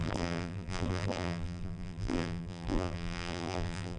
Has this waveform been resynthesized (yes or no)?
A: yes